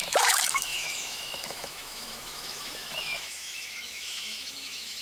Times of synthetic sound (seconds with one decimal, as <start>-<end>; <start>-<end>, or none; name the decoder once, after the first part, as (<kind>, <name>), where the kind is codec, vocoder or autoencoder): 0.0-5.0 (autoencoder, DAC-VAE)